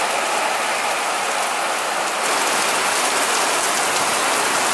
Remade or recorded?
recorded